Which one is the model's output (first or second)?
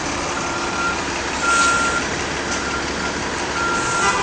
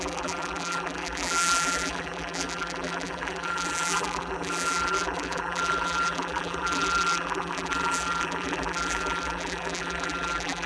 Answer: second